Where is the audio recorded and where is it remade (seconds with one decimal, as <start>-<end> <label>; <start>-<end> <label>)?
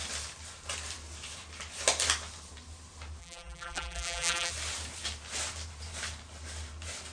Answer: 0.0-3.2 recorded; 3.2-4.5 remade; 4.5-7.1 recorded